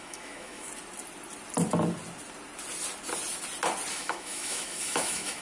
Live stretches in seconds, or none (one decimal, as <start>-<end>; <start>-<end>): 0.7-3.9